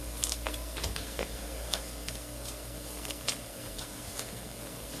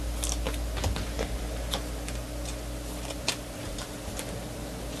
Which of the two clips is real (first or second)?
second